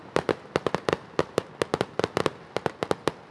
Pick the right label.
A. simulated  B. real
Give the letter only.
B